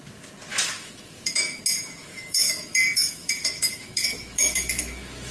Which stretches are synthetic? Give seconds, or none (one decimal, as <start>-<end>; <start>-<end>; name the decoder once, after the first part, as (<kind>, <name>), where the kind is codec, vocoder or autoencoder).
0.5-1.6 (autoencoder, DAC-VAE); 2.0-5.3